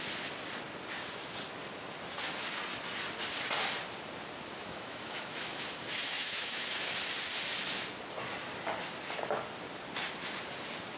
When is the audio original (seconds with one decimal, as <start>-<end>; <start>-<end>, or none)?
0.0-4.6; 6.9-11.0